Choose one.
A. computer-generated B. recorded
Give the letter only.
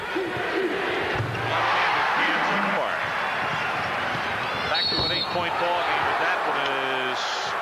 B